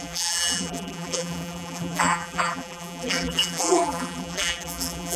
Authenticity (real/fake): fake